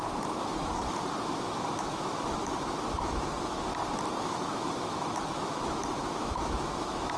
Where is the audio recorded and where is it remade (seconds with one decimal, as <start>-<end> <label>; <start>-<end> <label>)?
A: 0.0-0.8 remade; 0.8-1.4 recorded; 1.4-3.7 remade; 3.7-4.2 recorded; 4.2-7.2 remade